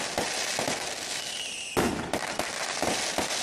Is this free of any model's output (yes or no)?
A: yes